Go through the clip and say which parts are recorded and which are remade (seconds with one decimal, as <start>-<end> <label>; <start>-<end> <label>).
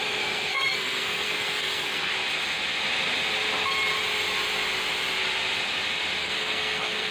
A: 0.0-2.1 remade; 2.1-6.2 recorded; 6.2-7.1 remade